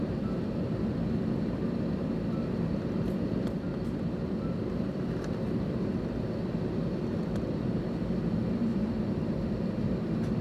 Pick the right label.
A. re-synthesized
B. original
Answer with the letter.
A